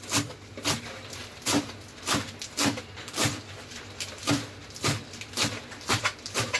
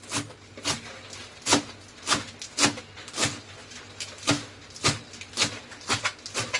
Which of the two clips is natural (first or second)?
second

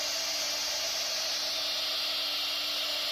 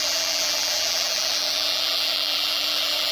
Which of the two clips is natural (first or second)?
first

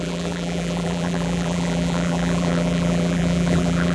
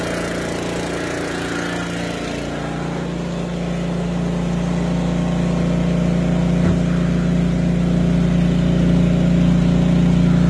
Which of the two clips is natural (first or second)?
second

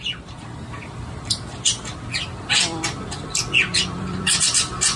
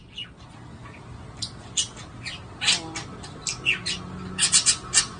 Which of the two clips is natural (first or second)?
second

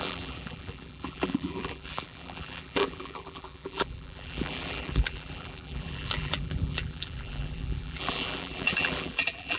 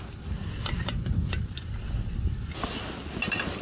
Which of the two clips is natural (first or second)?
second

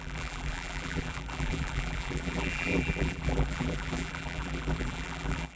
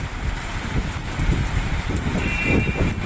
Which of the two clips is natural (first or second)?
second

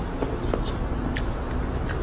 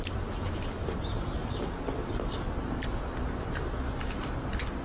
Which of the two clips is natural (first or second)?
first